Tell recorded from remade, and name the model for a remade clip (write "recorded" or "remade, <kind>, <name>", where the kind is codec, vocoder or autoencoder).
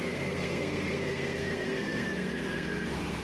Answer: remade, codec, SNAC